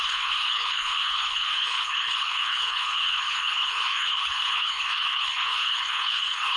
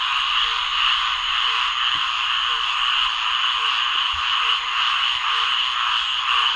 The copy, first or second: first